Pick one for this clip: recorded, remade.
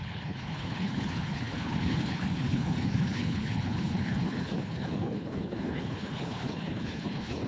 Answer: remade